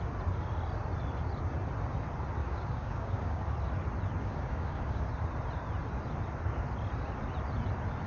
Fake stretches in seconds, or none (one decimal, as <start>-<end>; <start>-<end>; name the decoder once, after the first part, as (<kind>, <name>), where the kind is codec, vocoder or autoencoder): 2.4-3.5 (codec, DAC); 4.2-5.1